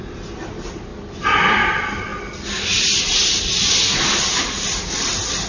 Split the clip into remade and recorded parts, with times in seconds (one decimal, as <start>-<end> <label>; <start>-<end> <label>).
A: 0.0-5.5 recorded